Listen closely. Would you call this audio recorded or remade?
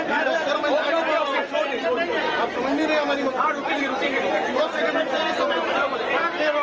recorded